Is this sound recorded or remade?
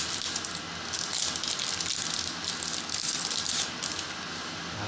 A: recorded